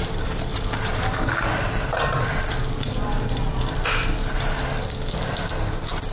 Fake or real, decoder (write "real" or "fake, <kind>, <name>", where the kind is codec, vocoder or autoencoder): real